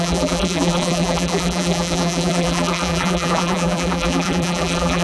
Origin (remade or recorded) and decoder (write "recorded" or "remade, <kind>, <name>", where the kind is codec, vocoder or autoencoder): remade, vocoder, BigVGAN v2